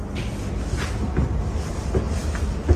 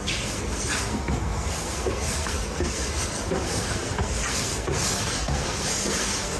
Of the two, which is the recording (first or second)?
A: first